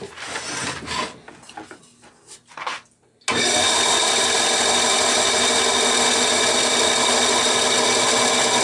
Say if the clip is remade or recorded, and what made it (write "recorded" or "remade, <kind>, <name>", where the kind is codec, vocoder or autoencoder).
recorded